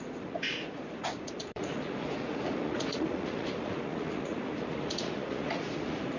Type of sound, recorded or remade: remade